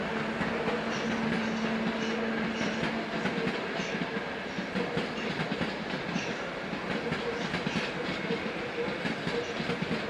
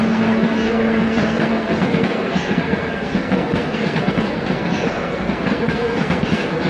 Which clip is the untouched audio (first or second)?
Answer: first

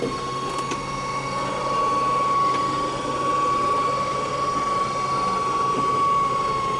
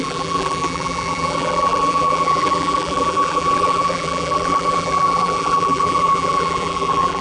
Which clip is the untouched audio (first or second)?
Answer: first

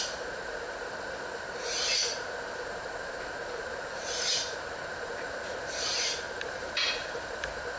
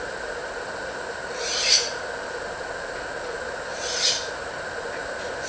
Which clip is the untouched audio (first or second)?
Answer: second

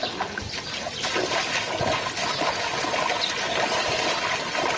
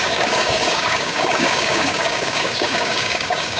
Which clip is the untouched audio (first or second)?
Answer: first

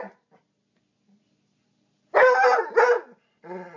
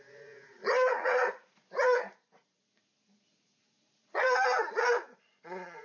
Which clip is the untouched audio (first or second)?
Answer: first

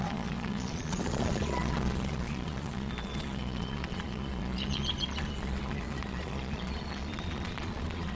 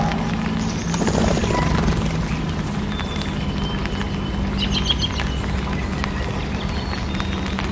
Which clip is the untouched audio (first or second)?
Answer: second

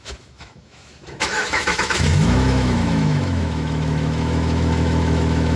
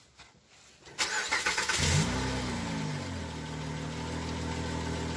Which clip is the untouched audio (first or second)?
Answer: second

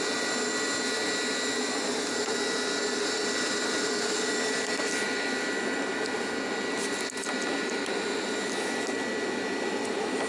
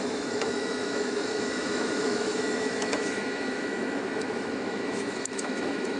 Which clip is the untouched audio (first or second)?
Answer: first